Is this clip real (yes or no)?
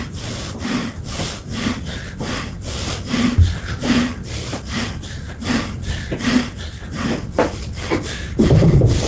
yes